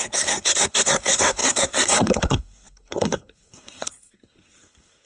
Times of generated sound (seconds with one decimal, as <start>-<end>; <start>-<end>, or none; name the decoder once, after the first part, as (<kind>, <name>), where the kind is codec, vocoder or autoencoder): 0.0-5.1 (codec, SNAC)